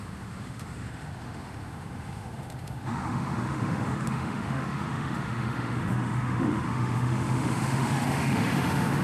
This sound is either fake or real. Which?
fake